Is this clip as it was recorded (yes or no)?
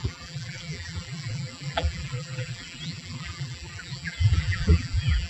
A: no